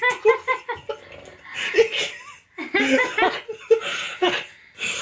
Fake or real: real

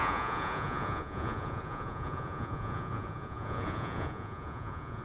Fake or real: fake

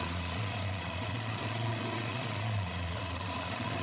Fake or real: fake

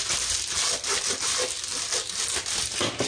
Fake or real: real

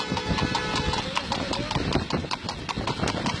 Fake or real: real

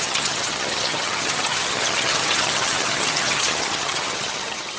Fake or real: fake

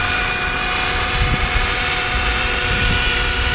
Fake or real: fake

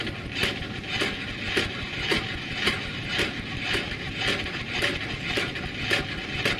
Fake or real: real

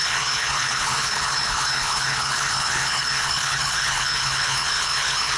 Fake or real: fake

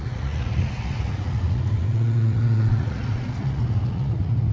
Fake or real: fake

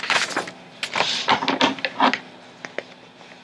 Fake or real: real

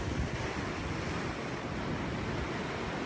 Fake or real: real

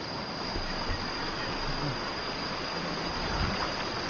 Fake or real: real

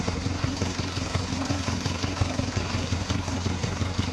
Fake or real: fake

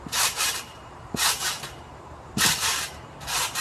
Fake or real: fake